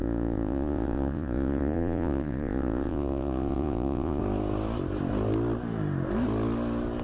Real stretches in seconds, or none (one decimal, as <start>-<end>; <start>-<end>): 4.2-7.0